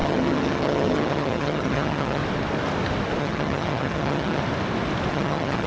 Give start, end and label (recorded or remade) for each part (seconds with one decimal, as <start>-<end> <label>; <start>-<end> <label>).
0.0-2.2 remade; 2.2-3.2 recorded; 3.2-4.4 remade; 4.4-5.1 recorded; 5.1-5.7 remade